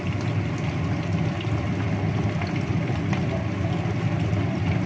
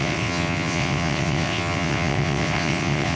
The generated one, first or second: second